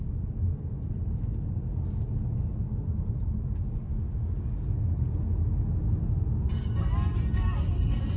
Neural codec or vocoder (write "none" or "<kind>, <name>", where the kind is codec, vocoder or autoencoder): none